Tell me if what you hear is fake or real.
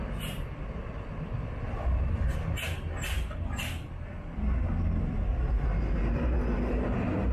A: real